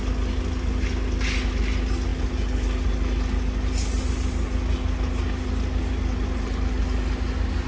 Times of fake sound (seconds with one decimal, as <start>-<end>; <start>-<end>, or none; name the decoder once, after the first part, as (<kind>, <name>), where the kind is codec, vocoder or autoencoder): none